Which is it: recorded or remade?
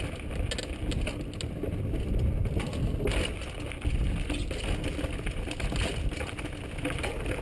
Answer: recorded